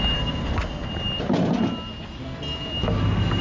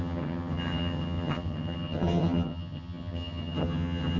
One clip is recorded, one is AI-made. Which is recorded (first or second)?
first